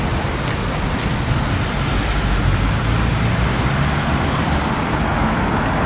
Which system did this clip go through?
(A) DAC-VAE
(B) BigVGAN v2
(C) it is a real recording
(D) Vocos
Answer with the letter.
C